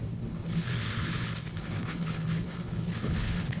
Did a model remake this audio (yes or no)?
yes